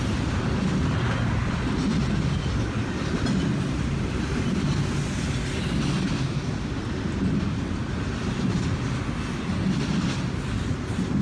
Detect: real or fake real